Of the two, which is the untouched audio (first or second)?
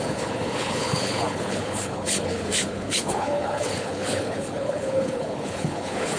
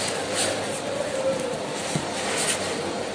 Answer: second